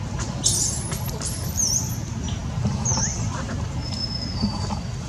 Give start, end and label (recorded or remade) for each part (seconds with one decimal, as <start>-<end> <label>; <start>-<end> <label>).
0.0-5.1 recorded

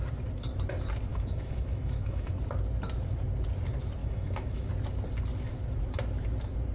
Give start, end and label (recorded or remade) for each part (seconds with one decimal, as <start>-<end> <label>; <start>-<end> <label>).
0.0-1.1 recorded; 1.1-2.3 remade; 2.3-4.0 recorded; 4.0-4.7 remade; 4.7-6.7 recorded

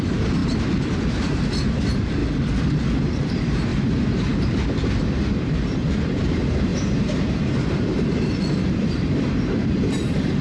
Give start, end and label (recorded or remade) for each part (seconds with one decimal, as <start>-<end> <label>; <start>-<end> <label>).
0.0-0.4 remade; 0.4-1.1 recorded; 1.1-2.2 remade; 2.2-3.0 recorded; 3.0-10.4 remade

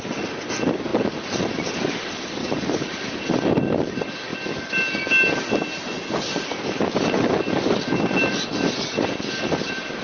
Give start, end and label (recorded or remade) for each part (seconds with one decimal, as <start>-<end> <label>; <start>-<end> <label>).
0.0-2.4 recorded; 2.4-3.1 remade; 3.1-10.0 recorded